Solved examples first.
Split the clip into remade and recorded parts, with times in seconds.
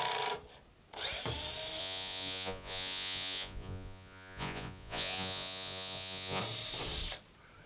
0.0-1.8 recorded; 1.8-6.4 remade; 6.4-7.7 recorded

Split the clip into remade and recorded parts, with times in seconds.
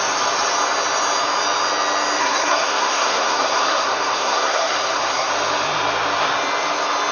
0.0-2.2 recorded; 2.2-5.3 remade; 5.3-7.1 recorded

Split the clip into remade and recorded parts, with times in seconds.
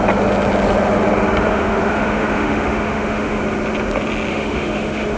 0.0-1.5 recorded; 1.5-3.4 remade; 3.4-4.3 recorded; 4.3-5.2 remade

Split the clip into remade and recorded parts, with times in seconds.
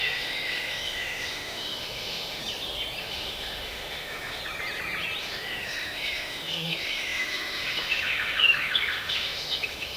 0.0-2.4 remade; 2.4-3.0 recorded; 3.0-4.4 remade; 4.4-5.2 recorded; 5.2-10.0 remade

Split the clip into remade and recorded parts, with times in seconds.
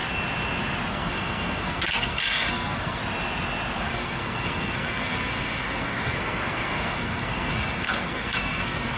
0.0-0.9 recorded; 0.9-3.0 remade; 3.0-3.8 recorded; 3.8-9.0 remade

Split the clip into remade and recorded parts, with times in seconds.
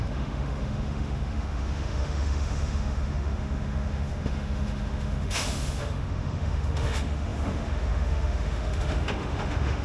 0.0-9.8 remade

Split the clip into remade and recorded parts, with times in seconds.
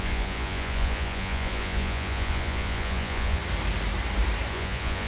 0.0-3.4 remade; 3.4-4.5 recorded; 4.5-5.1 remade